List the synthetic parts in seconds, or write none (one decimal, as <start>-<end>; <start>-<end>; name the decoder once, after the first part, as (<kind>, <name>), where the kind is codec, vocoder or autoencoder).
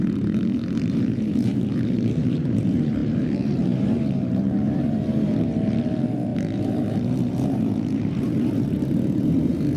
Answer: 0.0-9.8 (vocoder, BigVGAN v2)